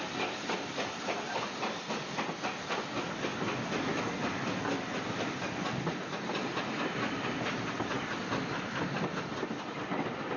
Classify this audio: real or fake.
real